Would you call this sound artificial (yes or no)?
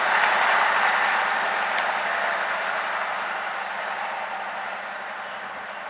no